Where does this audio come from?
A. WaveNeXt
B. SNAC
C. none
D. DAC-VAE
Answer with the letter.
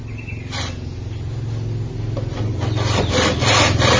C